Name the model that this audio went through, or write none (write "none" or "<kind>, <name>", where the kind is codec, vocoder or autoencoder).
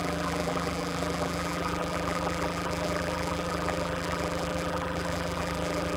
vocoder, BigVGAN v2